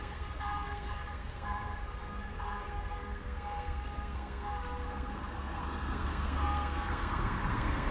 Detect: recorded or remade remade